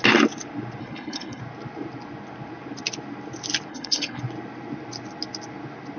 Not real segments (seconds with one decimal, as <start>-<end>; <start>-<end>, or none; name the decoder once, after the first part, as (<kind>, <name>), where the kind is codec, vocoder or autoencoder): 0.8-1.4 (codec, HILCodec); 3.7-4.2